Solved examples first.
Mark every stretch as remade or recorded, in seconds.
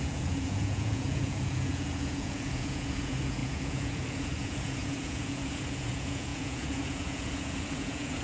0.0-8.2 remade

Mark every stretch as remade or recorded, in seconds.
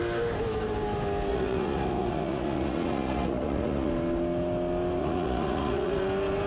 0.0-1.3 recorded; 1.3-3.9 remade; 3.9-5.0 recorded; 5.0-6.0 remade; 6.0-6.5 recorded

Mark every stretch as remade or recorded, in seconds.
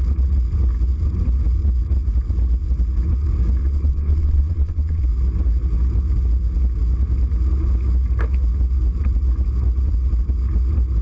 0.0-3.6 recorded; 3.6-5.0 remade; 5.0-11.0 recorded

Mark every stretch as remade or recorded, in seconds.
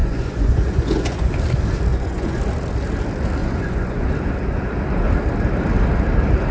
0.0-1.3 remade; 1.3-1.9 recorded; 1.9-2.4 remade; 2.4-3.4 recorded; 3.4-4.1 remade; 4.1-6.5 recorded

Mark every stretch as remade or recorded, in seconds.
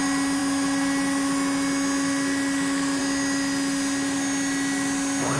0.0-5.4 recorded